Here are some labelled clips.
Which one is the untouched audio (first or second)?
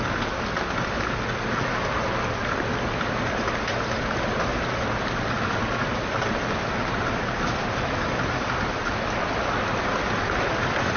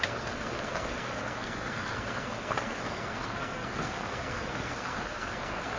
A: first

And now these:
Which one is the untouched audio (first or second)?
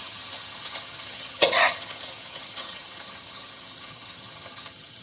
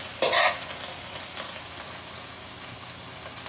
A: second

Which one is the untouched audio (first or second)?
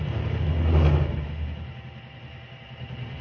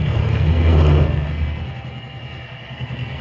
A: first